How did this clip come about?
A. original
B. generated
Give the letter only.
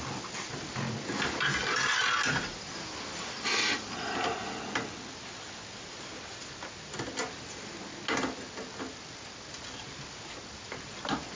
A